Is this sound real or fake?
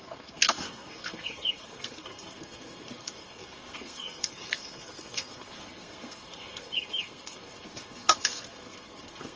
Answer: fake